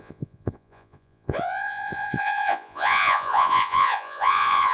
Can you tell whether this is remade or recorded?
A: remade